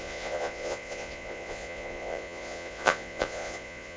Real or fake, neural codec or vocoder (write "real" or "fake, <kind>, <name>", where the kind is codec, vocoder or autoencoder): fake, vocoder, Vocos